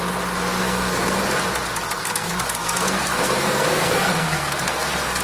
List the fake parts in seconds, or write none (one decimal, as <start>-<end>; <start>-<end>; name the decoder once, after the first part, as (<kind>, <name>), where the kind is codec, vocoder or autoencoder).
0.6-1.2 (codec, SNAC); 2.0-5.2